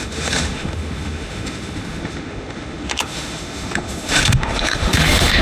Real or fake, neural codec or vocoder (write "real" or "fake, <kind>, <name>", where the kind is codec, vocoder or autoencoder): fake, autoencoder, DAC-VAE